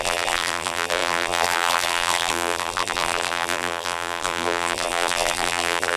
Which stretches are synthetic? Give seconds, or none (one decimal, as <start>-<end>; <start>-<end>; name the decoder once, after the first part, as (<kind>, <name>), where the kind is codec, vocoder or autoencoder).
0.0-6.0 (vocoder, BigVGAN v2)